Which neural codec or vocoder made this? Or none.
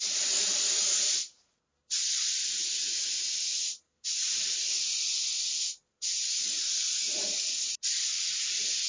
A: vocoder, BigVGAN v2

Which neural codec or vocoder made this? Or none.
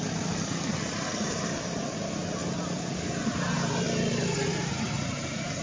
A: none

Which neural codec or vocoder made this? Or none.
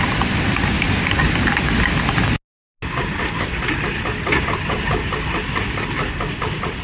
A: none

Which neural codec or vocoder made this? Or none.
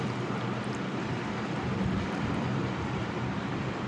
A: vocoder, BigVGAN v2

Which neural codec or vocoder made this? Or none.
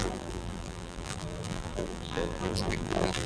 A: vocoder, BigVGAN v2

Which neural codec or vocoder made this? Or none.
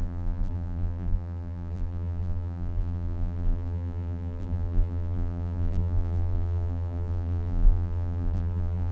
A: vocoder, BigVGAN v2